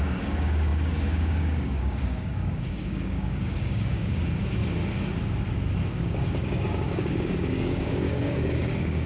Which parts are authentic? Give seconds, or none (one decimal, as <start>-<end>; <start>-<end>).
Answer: 4.6-5.9